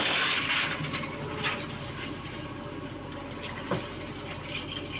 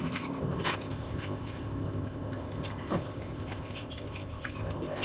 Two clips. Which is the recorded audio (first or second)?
first